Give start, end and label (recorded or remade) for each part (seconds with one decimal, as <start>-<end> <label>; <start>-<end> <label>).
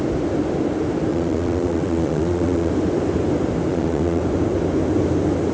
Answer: 0.0-1.1 recorded; 1.1-2.7 remade; 2.7-3.7 recorded; 3.7-4.2 remade; 4.2-5.5 recorded